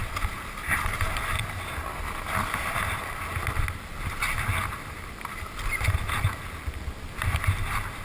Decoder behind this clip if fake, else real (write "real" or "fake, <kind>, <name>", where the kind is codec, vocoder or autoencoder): real